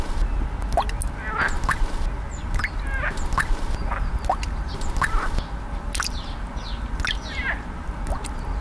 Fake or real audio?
real